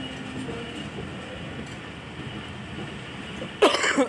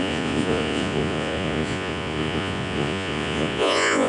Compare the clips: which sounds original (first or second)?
first